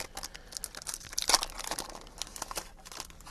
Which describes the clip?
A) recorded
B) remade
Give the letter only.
A